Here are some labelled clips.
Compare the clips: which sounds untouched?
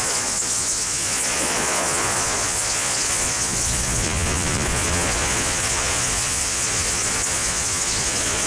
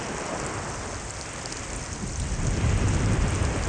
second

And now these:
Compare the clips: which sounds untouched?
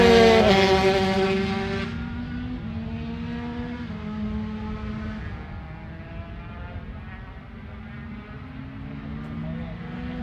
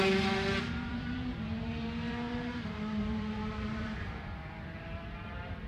first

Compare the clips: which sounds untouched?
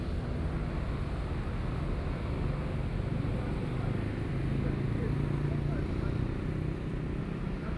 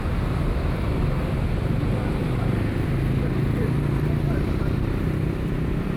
first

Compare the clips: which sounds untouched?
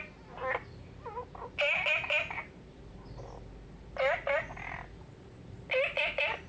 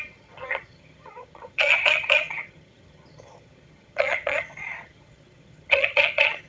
first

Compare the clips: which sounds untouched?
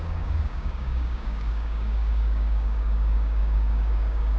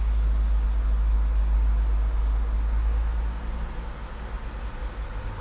second